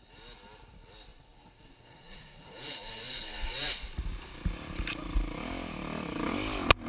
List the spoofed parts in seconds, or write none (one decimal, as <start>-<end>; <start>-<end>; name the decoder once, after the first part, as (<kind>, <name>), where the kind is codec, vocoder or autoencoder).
1.1-4.0 (vocoder, Vocos)